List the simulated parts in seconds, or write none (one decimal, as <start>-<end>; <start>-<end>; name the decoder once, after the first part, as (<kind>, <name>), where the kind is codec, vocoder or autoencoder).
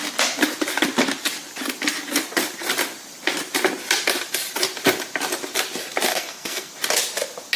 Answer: 6.1-6.7 (codec, SNAC)